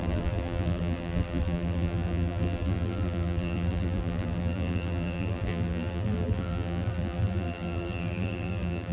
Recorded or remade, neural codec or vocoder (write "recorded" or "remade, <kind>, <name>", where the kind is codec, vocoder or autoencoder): remade, vocoder, BigVGAN v2